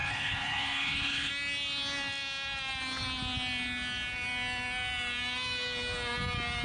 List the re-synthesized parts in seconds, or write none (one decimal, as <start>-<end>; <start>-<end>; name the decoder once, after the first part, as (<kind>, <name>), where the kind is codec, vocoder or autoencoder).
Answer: 0.0-1.3 (codec, HILCodec)

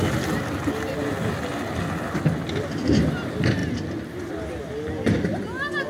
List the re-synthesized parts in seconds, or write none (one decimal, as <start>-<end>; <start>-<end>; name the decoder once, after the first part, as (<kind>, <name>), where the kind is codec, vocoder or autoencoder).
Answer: none

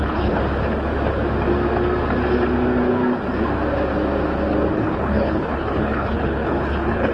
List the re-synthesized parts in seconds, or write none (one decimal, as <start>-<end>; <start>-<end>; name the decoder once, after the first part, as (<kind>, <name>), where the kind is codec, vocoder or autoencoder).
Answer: 0.0-0.4 (codec, HILCodec); 4.7-7.1

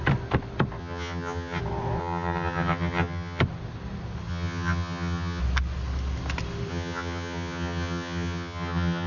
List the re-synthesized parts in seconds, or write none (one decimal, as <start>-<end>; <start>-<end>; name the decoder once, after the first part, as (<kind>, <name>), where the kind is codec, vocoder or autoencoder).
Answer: 0.8-1.6 (vocoder, HiFi-GAN); 2.0-3.4; 4.3-5.4; 6.7-9.1

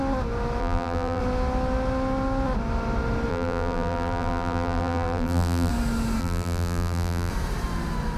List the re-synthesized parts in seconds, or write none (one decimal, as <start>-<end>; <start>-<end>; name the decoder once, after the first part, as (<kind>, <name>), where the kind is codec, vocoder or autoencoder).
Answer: 0.6-1.2 (vocoder, BigVGAN v2); 3.3-5.7; 6.2-7.3

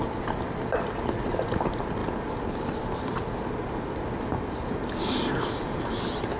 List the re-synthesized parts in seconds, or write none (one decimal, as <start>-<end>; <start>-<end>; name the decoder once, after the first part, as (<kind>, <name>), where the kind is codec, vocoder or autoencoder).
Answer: none